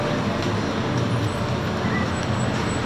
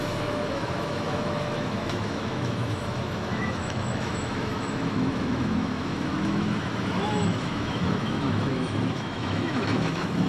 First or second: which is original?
first